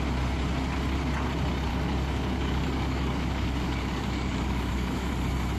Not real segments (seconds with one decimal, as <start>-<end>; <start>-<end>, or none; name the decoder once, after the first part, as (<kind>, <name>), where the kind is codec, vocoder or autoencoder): 1.7-5.1 (codec, DAC)

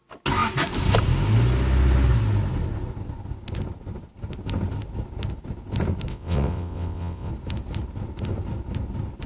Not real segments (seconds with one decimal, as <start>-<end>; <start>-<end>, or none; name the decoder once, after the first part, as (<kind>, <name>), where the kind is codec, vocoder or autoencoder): 6.1-7.3 (vocoder, WaveNeXt)